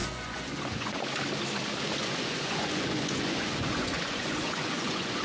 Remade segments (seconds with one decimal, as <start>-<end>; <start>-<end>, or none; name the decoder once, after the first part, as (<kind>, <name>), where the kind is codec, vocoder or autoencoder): 0.0-1.0 (vocoder, Vocos); 2.0-5.2